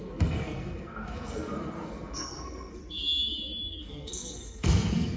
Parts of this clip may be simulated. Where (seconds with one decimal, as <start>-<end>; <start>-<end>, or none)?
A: 0.0-2.8; 3.7-5.2